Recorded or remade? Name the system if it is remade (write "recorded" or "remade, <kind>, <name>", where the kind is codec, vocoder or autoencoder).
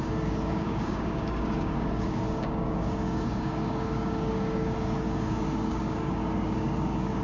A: remade, codec, DAC